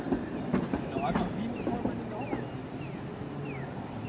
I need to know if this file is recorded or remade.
recorded